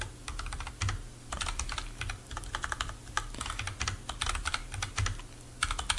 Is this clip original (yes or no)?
yes